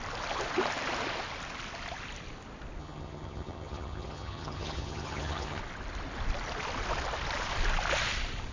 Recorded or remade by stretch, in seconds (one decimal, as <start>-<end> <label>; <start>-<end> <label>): 0.0-2.8 recorded; 2.8-5.6 remade; 5.6-8.5 recorded